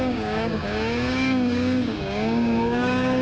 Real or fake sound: fake